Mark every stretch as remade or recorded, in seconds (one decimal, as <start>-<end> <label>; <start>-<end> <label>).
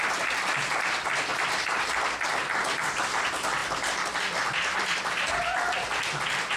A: 0.0-1.3 recorded; 1.3-1.9 remade; 1.9-3.6 recorded; 3.6-5.2 remade; 5.2-6.6 recorded